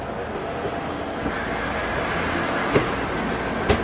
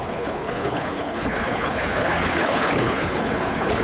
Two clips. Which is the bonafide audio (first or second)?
first